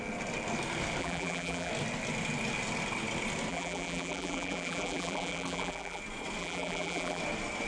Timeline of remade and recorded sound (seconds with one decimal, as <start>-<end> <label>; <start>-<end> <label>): 0.0-1.0 recorded; 1.0-1.7 remade; 1.7-3.5 recorded; 3.5-6.0 remade; 6.0-6.4 recorded; 6.4-7.2 remade; 7.2-7.7 recorded